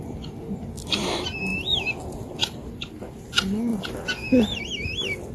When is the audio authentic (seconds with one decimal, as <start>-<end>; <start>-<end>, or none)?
0.0-5.3

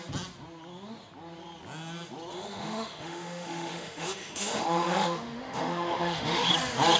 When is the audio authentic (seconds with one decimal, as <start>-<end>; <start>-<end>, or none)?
0.0-2.3; 6.5-7.0

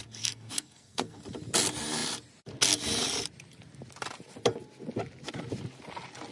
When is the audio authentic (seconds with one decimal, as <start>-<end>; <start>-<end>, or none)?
1.2-6.3

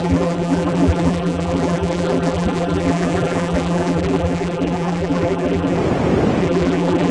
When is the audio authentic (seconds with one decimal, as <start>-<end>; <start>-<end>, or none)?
5.8-6.4

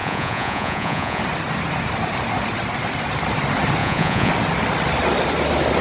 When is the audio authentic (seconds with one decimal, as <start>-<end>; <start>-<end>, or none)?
1.2-3.8; 4.3-5.8

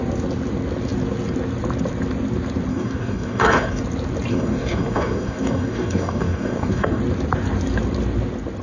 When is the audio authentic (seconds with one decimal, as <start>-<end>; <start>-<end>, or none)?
0.0-2.7; 3.8-4.3; 7.0-8.6

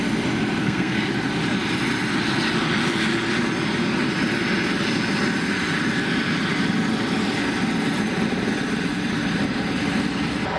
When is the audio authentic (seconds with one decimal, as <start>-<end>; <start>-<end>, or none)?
0.0-0.6; 1.1-10.6

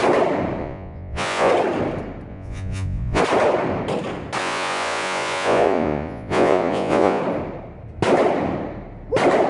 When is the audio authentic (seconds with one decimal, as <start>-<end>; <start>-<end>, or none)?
0.0-0.6; 1.5-2.3; 3.2-4.4; 7.2-9.5